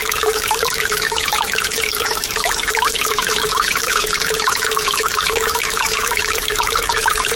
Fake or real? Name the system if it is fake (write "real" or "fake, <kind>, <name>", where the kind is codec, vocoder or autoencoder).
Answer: fake, autoencoder, DAC-VAE